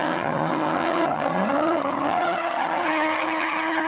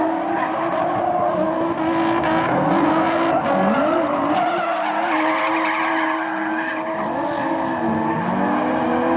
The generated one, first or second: first